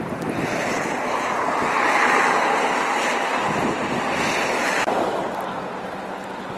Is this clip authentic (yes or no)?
yes